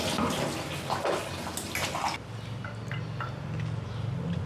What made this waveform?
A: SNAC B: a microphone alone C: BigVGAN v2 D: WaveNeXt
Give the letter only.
B